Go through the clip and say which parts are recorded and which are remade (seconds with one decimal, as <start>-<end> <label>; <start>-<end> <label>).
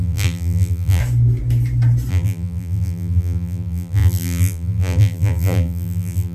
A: 0.0-1.0 remade; 1.0-2.1 recorded; 2.1-6.3 remade